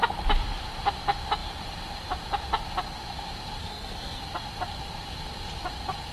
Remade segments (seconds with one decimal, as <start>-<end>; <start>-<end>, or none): 3.6-4.2